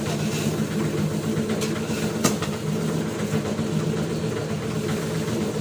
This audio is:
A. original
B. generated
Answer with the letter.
A